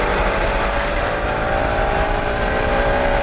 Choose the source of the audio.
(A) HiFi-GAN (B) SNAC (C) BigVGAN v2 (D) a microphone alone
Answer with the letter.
C